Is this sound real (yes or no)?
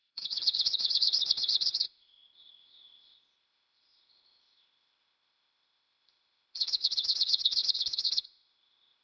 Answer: no